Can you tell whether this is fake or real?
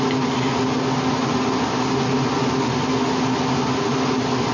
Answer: real